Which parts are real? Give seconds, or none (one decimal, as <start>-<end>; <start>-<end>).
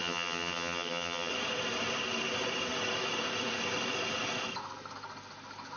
1.3-5.8